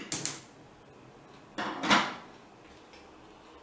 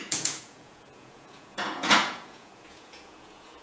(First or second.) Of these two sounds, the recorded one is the first